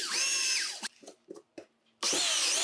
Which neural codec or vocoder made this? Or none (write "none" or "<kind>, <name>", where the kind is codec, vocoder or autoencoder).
none